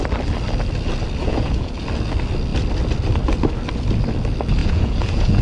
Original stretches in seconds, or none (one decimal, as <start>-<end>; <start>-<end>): 0.0-1.2; 1.7-4.6